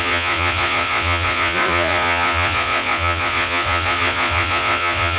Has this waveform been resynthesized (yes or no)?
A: yes